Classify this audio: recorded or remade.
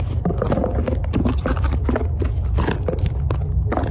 recorded